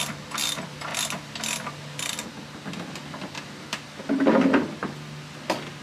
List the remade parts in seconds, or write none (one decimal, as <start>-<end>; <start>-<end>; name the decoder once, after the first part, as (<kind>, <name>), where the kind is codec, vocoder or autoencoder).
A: none